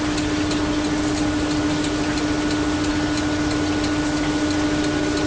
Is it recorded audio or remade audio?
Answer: recorded